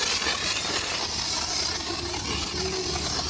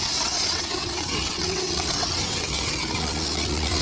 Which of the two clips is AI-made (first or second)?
second